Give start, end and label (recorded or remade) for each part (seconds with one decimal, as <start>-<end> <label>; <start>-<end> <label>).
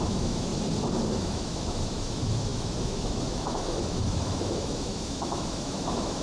0.0-0.5 remade; 0.5-1.2 recorded; 1.2-6.2 remade